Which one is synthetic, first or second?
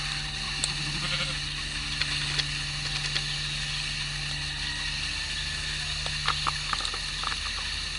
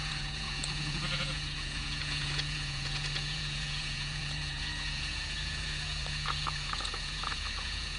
second